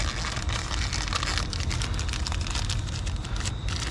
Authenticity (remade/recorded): recorded